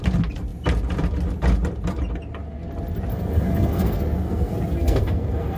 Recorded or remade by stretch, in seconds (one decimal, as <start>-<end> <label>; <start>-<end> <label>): 0.0-3.1 recorded; 3.1-5.6 remade